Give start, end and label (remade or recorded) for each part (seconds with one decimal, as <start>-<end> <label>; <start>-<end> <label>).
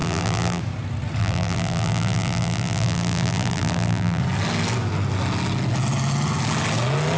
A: 0.0-0.6 remade; 0.6-1.2 recorded; 1.2-4.2 remade; 4.2-7.2 recorded